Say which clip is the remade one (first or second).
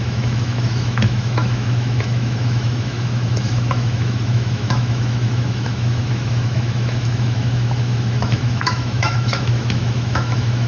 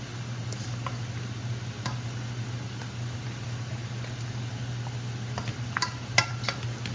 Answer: first